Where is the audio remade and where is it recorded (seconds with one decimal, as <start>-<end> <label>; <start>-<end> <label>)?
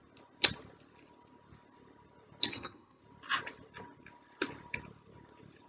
0.0-2.5 recorded; 2.5-3.0 remade; 3.0-5.7 recorded